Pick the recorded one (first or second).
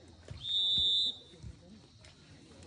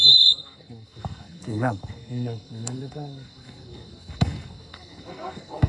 first